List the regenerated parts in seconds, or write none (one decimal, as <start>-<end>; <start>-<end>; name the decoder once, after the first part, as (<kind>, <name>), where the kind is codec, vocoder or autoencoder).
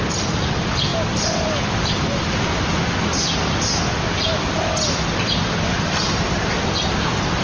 5.7-6.6 (vocoder, BigVGAN v2)